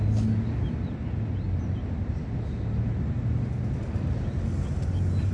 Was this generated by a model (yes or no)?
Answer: no